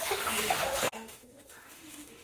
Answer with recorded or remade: remade